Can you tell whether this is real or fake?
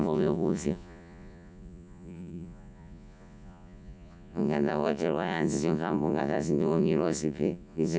fake